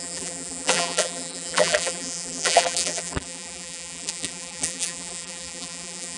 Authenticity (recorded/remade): remade